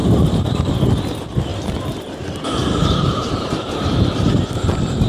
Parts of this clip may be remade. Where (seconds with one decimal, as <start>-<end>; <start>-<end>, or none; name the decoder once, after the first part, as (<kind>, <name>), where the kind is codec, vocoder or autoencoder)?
0.0-0.7 (vocoder, BigVGAN v2); 1.5-3.7